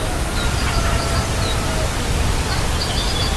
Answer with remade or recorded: recorded